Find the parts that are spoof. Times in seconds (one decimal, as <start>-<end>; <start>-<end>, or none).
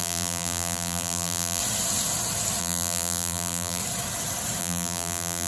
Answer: 0.0-1.6; 2.6-3.8; 4.6-5.5